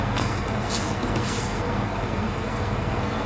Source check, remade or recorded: remade